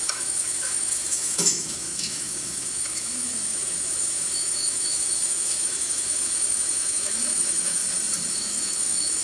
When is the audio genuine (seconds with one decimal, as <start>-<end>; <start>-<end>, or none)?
7.8-8.3